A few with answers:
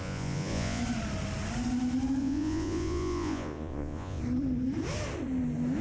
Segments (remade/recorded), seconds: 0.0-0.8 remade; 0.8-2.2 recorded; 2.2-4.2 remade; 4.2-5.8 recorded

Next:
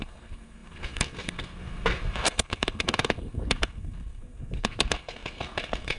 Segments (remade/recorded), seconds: 0.0-6.0 remade

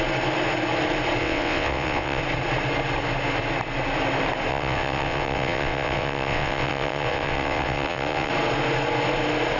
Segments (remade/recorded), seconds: 0.0-1.2 recorded; 1.2-2.2 remade; 2.2-4.5 recorded; 4.5-8.3 remade; 8.3-9.6 recorded

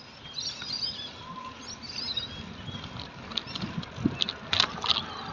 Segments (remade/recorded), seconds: 0.0-5.3 recorded